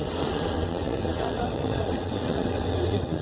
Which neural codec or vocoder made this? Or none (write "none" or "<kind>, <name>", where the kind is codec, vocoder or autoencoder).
vocoder, WaveNeXt